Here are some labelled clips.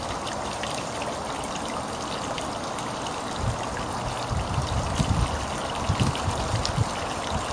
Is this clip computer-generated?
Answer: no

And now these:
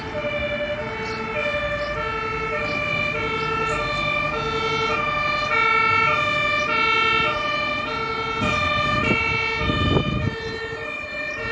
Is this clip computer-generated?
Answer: no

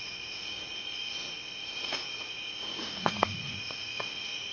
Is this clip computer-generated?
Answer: yes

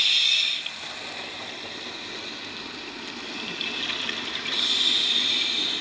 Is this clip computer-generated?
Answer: no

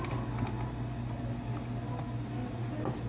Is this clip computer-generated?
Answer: no